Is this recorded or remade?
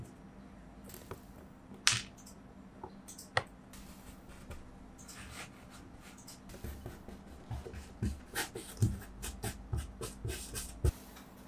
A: recorded